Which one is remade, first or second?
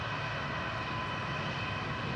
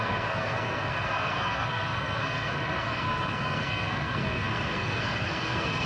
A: second